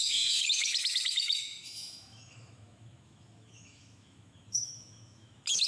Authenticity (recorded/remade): remade